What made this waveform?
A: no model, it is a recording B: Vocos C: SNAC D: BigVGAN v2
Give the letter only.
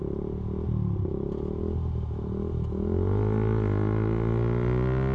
A